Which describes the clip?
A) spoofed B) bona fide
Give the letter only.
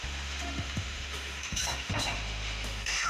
A